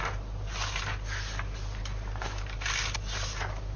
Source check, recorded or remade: recorded